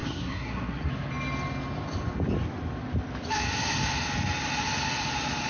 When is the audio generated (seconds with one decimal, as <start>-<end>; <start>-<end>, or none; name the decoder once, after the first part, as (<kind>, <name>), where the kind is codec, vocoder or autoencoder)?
0.0-0.9 (codec, SNAC)